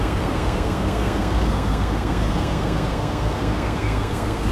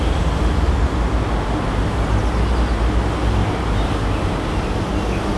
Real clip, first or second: second